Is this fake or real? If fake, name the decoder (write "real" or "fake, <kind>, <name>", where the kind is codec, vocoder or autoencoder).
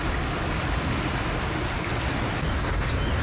real